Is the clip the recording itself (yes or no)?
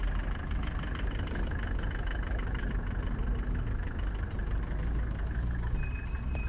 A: yes